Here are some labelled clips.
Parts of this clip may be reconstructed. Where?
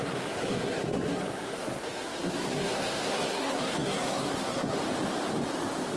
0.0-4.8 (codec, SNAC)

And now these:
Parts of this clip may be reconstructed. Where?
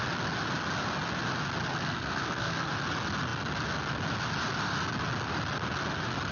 1.7-2.7 (codec, SNAC)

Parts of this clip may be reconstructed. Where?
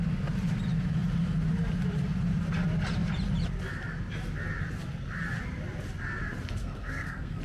6.6-7.4 (codec, SNAC)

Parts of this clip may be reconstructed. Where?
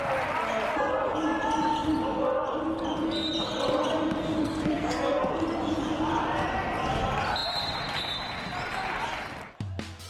4.2-5.3 (codec, SNAC)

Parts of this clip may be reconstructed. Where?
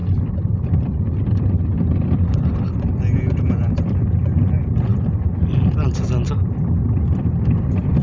none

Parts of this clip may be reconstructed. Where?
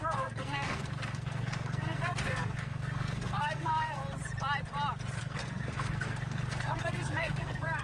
0.0-4.0 (codec, SNAC); 5.2-7.8